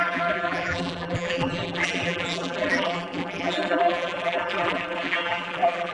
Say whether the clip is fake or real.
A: fake